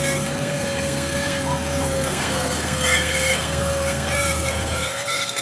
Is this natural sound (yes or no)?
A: no